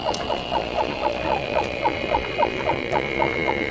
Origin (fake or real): fake